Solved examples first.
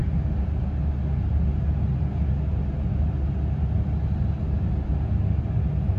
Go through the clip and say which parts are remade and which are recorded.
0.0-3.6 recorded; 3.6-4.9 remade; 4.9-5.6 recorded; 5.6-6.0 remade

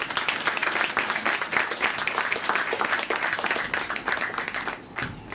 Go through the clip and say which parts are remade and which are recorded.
0.0-5.3 remade

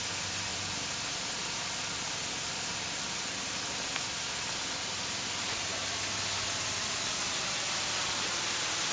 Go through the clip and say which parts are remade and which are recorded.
0.0-0.5 recorded; 0.5-2.3 remade; 2.3-8.9 recorded

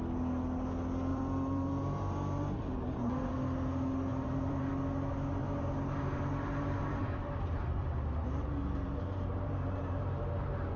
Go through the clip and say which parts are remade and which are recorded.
0.0-1.1 recorded; 1.1-3.3 remade; 3.3-4.1 recorded; 4.1-4.7 remade; 4.7-5.4 recorded; 5.4-10.3 remade; 10.3-10.8 recorded

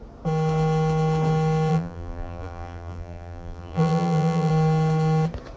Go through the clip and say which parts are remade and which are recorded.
0.0-1.7 recorded; 1.7-4.5 remade; 4.5-5.6 recorded

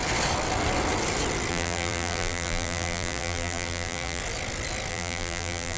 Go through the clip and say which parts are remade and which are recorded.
0.0-1.5 recorded; 1.5-4.2 remade; 4.2-4.9 recorded; 4.9-5.8 remade

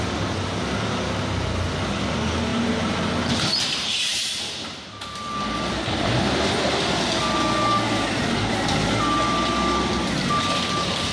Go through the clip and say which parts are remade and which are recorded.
0.0-11.1 recorded